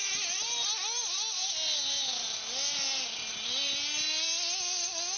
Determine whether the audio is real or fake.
real